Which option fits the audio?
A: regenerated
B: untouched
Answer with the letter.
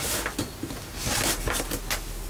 B